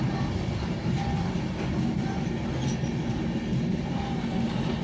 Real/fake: real